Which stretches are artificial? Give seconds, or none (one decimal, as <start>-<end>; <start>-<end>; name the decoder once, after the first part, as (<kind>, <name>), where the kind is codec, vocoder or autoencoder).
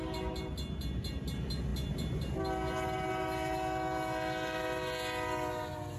none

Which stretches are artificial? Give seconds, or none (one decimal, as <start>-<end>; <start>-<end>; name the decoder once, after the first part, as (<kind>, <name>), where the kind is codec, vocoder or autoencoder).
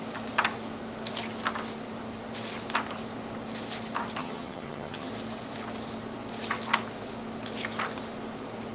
4.2-5.1 (vocoder, HiFi-GAN)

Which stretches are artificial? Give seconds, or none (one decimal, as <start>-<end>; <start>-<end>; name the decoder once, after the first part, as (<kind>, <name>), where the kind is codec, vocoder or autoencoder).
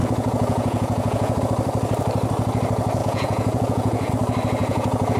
0.0-1.4 (vocoder, Vocos); 3.0-4.1; 4.6-5.2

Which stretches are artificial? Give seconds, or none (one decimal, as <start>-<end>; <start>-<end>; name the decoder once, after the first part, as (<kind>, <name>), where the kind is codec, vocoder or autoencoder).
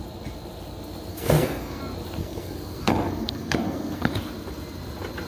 1.1-1.8 (codec, SNAC); 2.2-4.1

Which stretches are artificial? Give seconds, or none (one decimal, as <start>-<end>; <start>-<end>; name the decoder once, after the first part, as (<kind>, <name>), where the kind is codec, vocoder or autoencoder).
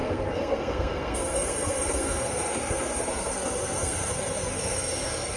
0.0-5.4 (codec, SNAC)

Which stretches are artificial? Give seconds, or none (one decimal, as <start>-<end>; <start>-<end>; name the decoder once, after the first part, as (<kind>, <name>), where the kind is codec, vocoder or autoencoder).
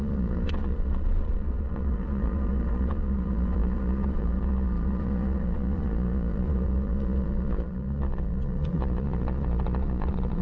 0.0-10.4 (vocoder, Vocos)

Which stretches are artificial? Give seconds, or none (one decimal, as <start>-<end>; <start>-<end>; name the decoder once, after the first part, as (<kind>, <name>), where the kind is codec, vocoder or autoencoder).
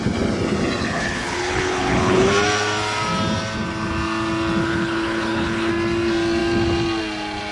0.8-2.3 (codec, HILCodec); 4.6-5.7